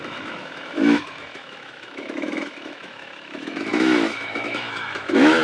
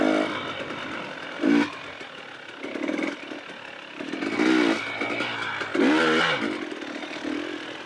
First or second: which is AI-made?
first